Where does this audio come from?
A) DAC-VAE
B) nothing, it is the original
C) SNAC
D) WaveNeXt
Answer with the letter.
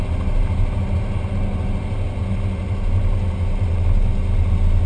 B